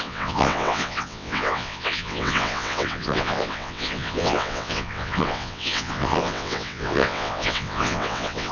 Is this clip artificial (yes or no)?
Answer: yes